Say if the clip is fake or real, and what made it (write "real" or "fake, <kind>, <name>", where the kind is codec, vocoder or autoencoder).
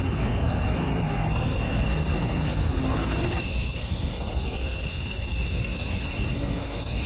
fake, codec, SNAC